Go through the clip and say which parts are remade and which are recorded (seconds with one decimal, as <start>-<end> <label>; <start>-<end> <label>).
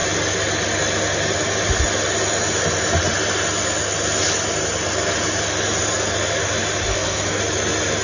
0.0-6.9 recorded; 6.9-7.4 remade; 7.4-8.0 recorded